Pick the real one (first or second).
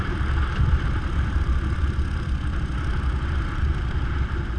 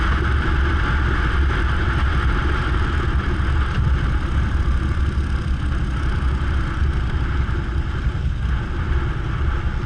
second